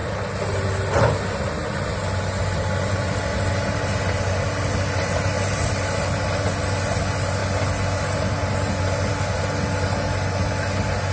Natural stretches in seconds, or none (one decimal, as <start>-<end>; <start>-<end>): 0.0-11.1